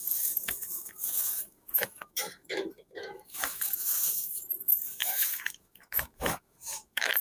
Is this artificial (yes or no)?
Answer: yes